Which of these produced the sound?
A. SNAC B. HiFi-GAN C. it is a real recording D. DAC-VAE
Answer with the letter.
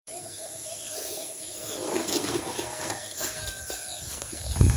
A